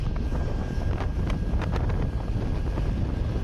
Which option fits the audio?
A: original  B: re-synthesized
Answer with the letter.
A